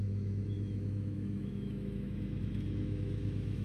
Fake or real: fake